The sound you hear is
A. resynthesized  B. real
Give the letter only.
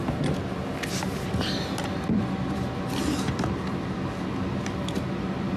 B